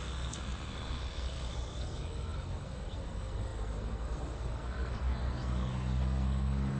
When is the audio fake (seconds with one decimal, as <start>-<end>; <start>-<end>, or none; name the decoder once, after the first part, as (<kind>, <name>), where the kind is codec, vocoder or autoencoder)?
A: 0.0-6.8 (codec, SNAC)